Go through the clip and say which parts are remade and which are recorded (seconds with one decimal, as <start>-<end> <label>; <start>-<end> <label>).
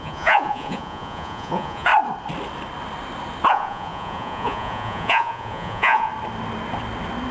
0.0-1.9 remade; 1.9-3.5 recorded; 3.5-6.1 remade; 6.1-7.3 recorded